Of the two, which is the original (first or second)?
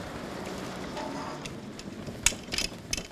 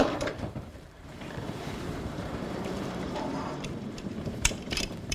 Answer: first